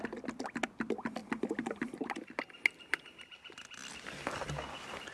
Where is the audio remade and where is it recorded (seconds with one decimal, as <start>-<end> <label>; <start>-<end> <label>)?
0.0-5.1 recorded